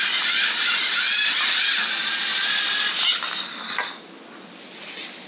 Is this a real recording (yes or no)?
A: yes